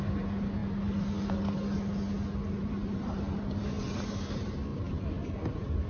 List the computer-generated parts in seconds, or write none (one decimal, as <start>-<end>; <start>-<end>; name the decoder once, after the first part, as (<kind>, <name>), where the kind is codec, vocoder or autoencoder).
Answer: none